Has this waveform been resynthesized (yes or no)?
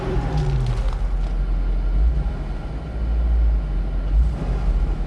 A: no